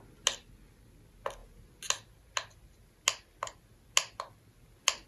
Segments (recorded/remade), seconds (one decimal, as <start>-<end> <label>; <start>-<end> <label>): 0.0-5.1 recorded